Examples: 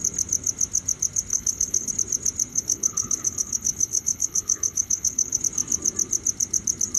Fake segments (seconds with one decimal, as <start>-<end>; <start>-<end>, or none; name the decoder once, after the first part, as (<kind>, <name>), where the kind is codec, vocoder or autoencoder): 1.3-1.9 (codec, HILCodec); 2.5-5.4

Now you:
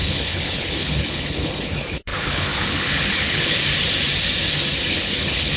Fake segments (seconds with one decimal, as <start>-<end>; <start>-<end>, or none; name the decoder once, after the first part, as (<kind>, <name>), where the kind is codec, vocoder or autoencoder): 0.0-3.6 (codec, HILCodec); 4.9-5.6

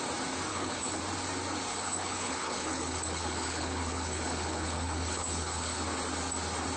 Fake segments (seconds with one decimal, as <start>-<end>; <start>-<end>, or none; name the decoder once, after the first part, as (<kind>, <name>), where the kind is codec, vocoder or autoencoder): 0.5-1.0 (codec, HILCodec); 1.7-5.8

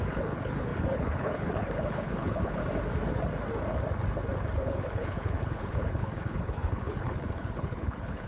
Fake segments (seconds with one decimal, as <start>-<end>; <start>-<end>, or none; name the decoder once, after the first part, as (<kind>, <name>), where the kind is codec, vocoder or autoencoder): 0.0-2.6 (codec, HILCodec); 4.6-8.3

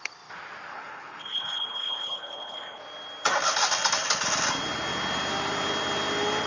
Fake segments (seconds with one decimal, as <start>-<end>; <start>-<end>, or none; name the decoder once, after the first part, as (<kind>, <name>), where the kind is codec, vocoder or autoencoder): 0.7-2.8 (codec, HILCodec)

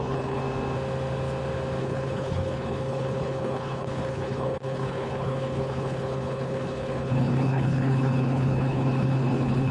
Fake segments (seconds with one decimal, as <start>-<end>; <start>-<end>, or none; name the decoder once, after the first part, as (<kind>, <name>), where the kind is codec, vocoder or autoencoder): 0.0-0.4 (codec, HILCodec); 1.8-9.7

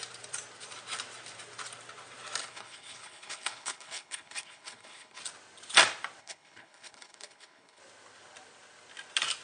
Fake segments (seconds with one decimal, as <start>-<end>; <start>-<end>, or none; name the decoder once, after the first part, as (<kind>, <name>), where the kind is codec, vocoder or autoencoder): 2.4-5.2 (codec, HILCodec); 6.2-7.8

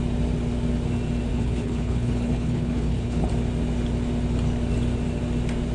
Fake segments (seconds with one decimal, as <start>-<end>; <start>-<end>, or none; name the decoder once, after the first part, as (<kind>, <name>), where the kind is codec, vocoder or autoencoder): 1.3-3.3 (codec, HILCodec)